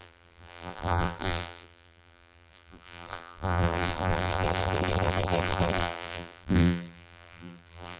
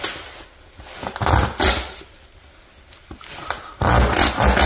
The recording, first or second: second